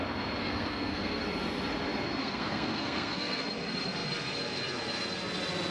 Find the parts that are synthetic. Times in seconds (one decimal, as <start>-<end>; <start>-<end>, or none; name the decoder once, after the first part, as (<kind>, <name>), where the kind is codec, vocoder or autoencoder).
0.4-1.2 (codec, SNAC); 2.2-3.4